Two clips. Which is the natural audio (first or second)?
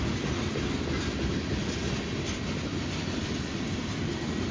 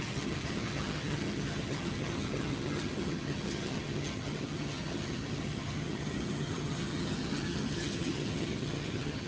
first